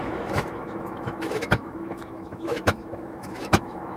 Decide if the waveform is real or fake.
fake